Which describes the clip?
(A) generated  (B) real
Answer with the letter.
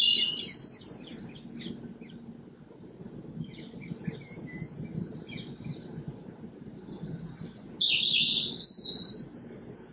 B